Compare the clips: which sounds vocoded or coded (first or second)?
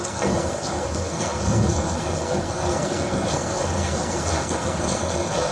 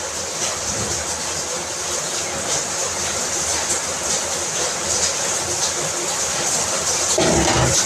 first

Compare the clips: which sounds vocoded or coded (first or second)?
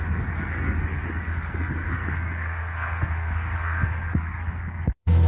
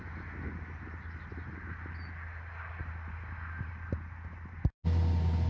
first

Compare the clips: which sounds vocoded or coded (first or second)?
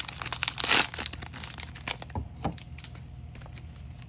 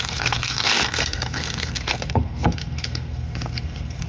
second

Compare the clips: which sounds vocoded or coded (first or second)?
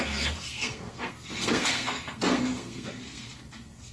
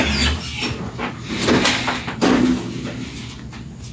first